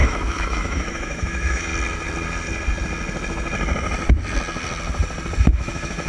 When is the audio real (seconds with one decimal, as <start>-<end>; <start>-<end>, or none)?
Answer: 1.7-5.4